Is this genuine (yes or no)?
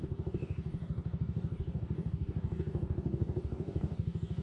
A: no